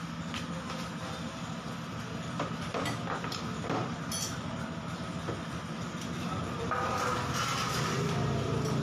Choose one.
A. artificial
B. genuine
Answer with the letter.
B